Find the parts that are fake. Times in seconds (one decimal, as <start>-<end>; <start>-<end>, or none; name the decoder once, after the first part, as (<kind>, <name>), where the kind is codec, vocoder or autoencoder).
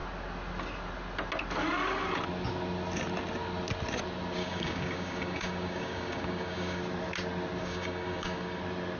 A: 4.4-6.8 (codec, DAC); 7.6-8.6